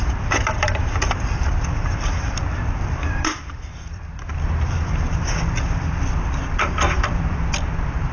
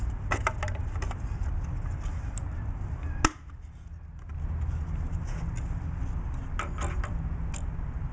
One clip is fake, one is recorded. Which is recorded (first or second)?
second